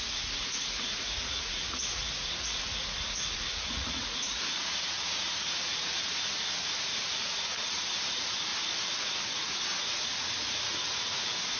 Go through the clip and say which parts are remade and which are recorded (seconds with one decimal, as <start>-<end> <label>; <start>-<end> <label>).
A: 0.0-8.5 remade; 8.5-9.0 recorded; 9.0-11.6 remade